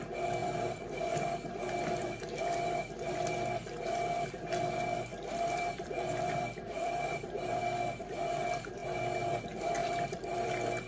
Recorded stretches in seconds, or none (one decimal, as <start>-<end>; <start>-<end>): 0.0-0.4; 1.3-5.1; 7.6-8.8; 9.4-9.8; 10.5-10.9